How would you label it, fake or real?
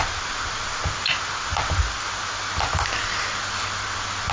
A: real